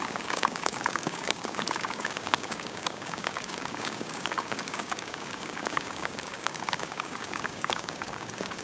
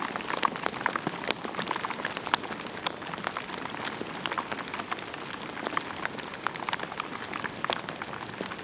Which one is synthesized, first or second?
first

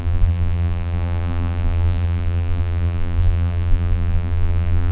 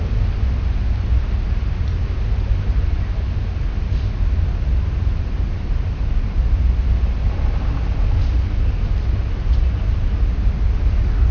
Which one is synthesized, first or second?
first